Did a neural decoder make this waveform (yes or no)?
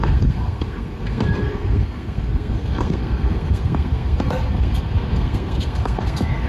yes